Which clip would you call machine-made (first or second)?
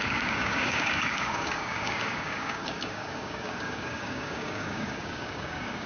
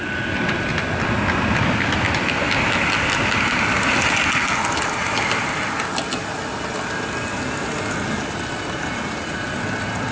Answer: first